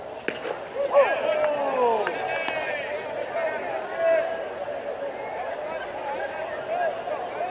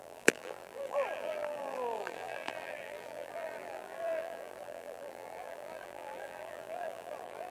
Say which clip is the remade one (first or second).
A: second